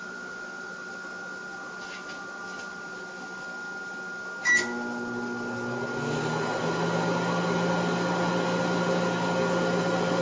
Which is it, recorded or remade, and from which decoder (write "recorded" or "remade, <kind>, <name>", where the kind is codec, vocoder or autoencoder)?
recorded